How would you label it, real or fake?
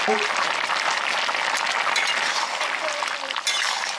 fake